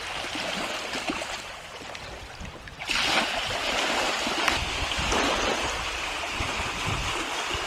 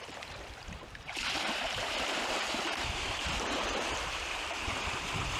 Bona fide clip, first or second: first